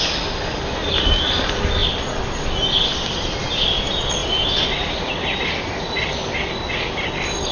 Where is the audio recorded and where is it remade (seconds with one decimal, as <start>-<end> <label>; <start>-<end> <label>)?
0.0-7.5 recorded